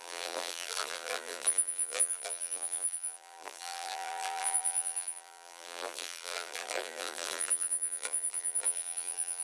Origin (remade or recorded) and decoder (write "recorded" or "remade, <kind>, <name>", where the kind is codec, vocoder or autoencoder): remade, vocoder, BigVGAN v2